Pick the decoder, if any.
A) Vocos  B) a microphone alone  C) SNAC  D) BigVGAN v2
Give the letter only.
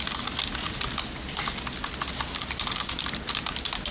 B